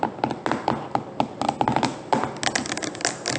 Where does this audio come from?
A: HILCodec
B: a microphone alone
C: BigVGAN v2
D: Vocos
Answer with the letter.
B